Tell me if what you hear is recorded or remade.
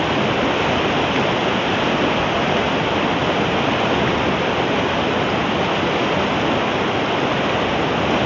recorded